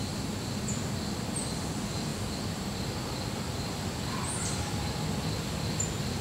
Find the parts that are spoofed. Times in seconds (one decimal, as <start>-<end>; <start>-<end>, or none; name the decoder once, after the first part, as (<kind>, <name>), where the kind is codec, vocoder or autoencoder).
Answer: none